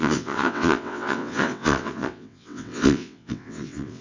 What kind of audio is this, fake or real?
fake